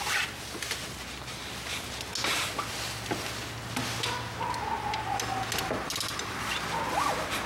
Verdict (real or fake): real